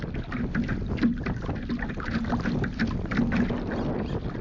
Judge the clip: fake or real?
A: real